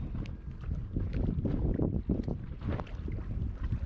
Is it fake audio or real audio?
real